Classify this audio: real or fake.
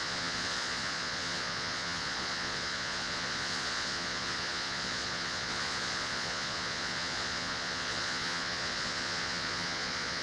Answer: fake